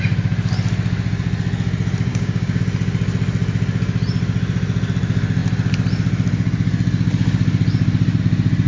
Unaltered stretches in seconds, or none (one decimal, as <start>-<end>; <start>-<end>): 0.0-2.1; 2.6-8.7